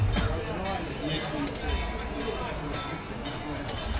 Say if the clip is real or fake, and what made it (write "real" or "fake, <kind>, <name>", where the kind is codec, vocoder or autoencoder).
real